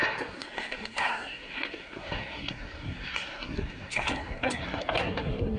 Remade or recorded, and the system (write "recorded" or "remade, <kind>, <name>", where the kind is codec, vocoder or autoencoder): remade, codec, SNAC